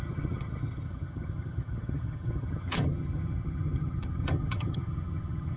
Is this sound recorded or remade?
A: remade